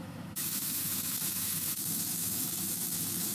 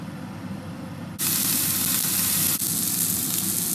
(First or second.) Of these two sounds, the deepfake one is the first